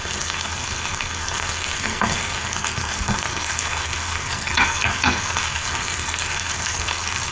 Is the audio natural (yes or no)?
no